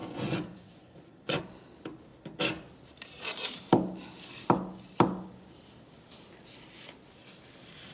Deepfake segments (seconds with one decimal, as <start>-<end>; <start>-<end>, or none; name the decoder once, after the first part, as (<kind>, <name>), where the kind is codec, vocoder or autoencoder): 0.0-1.4 (vocoder, Vocos)